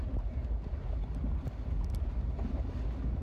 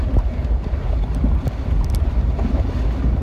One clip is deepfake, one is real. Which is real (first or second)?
first